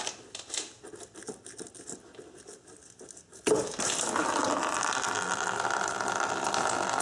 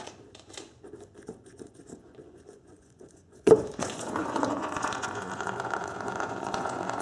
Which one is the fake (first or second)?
second